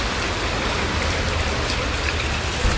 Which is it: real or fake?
fake